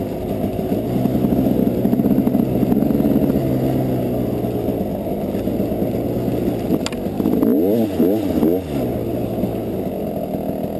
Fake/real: real